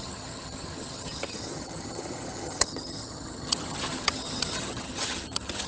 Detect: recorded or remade remade